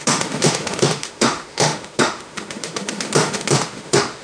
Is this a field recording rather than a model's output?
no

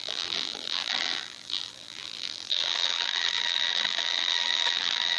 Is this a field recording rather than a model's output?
no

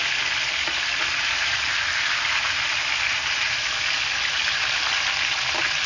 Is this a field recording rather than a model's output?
yes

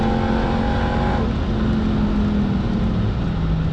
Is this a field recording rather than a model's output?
yes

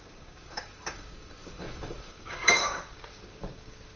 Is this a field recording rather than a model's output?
no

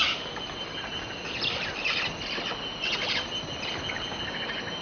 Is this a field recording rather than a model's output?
yes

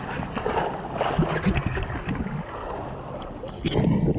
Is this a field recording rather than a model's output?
yes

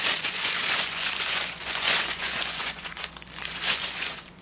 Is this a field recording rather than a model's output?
no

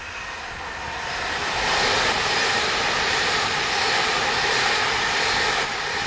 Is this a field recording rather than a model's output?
yes